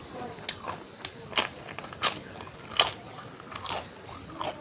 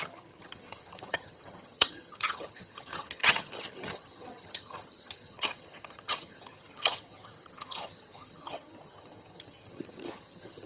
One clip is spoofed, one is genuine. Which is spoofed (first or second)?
second